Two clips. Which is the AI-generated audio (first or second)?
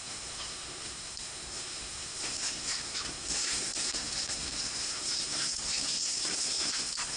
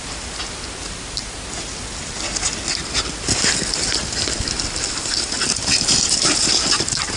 first